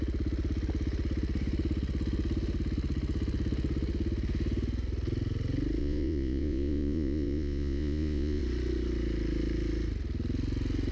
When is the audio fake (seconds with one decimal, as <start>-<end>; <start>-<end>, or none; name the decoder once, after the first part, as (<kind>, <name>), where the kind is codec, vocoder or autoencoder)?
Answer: 5.8-8.4 (vocoder, Vocos)